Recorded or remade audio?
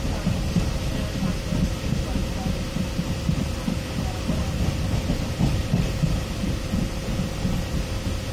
recorded